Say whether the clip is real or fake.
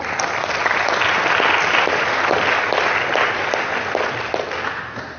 real